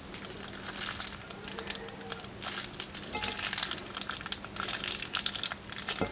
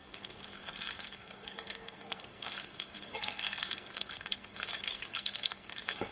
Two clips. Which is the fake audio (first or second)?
second